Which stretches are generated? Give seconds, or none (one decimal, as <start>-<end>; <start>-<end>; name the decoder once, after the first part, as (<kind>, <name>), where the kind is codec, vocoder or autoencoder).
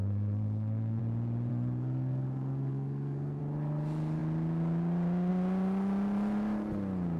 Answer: 0.0-1.0 (codec, SNAC); 1.5-3.4